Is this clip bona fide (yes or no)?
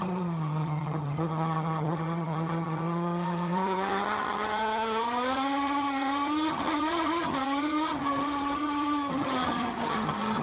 no